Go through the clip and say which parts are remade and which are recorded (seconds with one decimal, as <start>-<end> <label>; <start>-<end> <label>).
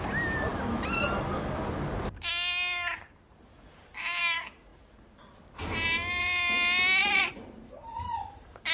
0.0-4.7 recorded; 4.7-6.2 remade; 6.2-7.0 recorded; 7.0-8.7 remade